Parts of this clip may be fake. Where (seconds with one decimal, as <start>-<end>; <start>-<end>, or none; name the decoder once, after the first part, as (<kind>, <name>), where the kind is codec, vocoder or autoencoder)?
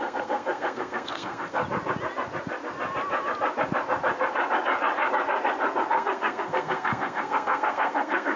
0.0-1.6 (codec, SNAC); 5.9-8.4